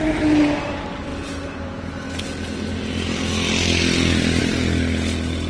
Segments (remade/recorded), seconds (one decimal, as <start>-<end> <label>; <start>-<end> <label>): 0.0-5.5 recorded